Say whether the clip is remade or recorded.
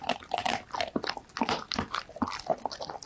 recorded